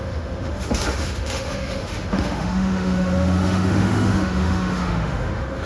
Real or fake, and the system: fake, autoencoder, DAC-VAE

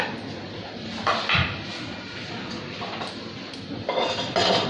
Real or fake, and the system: real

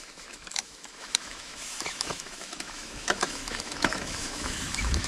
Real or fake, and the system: fake, autoencoder, DAC-VAE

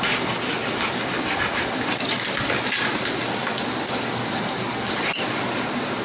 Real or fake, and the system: real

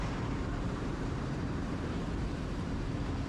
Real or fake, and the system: fake, vocoder, BigVGAN v2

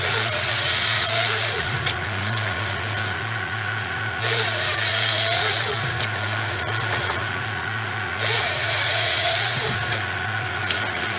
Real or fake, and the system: fake, vocoder, Vocos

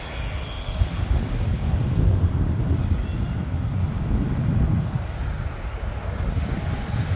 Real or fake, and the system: real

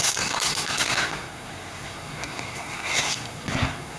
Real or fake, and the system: fake, codec, SNAC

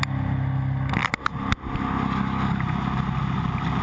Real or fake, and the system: real